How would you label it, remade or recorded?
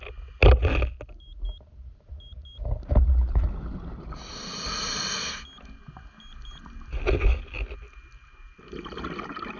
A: recorded